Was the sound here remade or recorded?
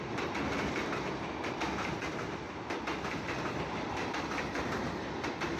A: recorded